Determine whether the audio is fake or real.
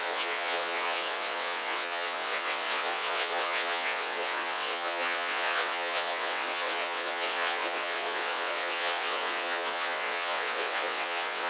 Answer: fake